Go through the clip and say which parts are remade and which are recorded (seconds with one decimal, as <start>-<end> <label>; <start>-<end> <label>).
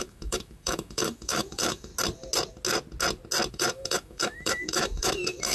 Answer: 0.0-1.9 remade; 1.9-3.5 recorded; 3.5-5.5 remade